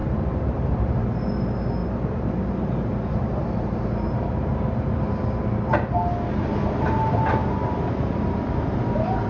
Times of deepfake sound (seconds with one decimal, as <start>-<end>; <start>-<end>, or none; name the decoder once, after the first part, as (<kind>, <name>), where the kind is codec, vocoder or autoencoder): 0.0-1.0 (vocoder, BigVGAN v2); 1.8-5.0; 7.4-8.8